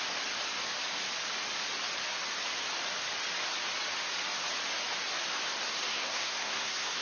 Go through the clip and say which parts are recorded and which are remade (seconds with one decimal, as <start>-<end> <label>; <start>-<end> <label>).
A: 0.0-5.9 recorded; 5.9-7.0 remade